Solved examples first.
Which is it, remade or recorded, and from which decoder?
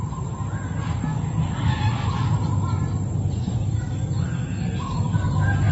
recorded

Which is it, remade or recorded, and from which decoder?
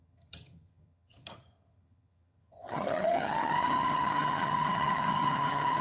remade, vocoder, HiFi-GAN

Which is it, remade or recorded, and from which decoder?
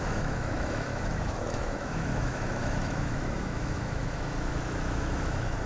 remade, autoencoder, DAC-VAE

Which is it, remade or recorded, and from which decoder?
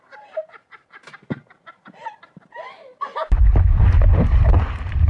remade, vocoder, BigVGAN v2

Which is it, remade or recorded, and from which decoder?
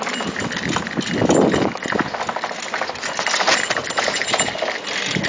recorded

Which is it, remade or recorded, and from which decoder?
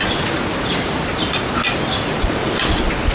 recorded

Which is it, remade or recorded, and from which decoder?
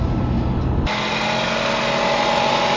recorded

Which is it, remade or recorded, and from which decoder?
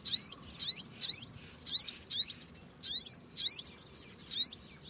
recorded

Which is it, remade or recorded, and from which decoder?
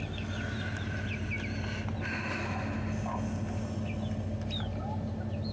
recorded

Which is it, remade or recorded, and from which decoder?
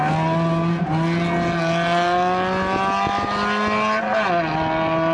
recorded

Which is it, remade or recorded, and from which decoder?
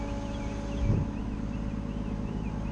recorded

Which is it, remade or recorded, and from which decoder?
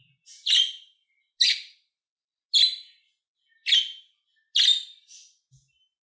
recorded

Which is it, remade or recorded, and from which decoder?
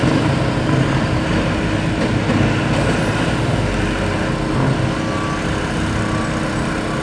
recorded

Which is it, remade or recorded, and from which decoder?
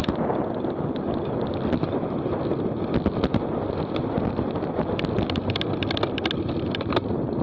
recorded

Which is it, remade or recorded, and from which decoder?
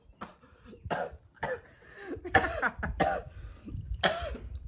remade, vocoder, BigVGAN v2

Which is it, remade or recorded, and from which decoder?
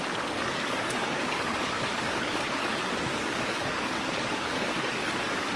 remade, codec, DAC